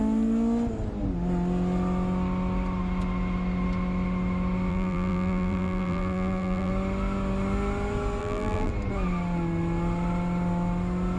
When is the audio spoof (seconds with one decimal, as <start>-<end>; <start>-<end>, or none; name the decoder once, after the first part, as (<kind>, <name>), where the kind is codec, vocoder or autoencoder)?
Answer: 4.7-6.7 (vocoder, BigVGAN v2); 8.2-8.7